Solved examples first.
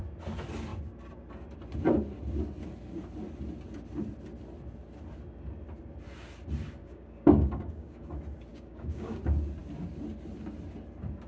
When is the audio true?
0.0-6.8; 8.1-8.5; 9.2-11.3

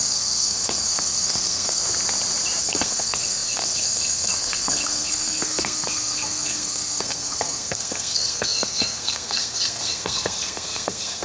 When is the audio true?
1.8-2.6

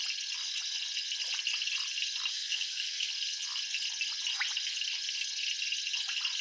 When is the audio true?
0.0-2.3; 3.1-6.4

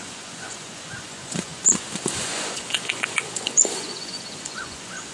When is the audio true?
none

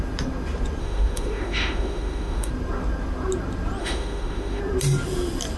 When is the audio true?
0.0-0.8; 2.5-3.8; 4.6-5.6